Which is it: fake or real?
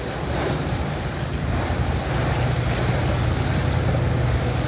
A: real